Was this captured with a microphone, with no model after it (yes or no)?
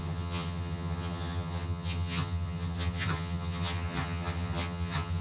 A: no